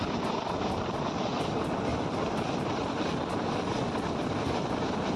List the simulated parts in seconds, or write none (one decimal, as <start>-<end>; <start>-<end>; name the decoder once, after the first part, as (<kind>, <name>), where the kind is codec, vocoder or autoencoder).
none